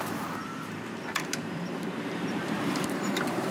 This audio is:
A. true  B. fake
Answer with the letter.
B